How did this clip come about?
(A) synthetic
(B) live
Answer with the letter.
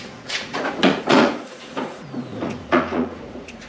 A